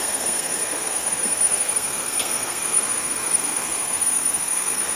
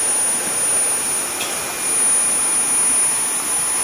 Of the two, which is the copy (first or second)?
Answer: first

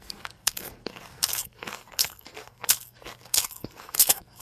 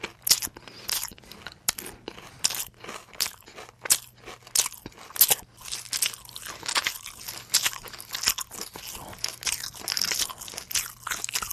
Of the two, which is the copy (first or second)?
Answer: first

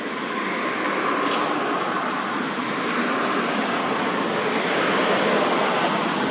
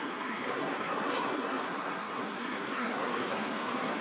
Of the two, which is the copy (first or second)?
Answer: second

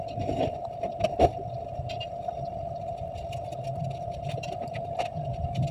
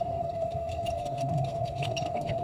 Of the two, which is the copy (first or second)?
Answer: second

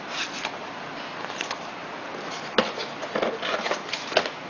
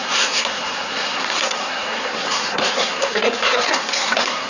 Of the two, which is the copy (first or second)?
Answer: second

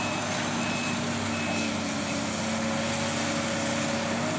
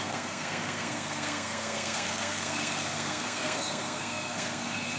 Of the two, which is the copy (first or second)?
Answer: second